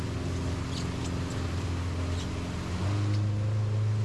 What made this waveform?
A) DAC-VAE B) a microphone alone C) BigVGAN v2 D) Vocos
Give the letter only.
B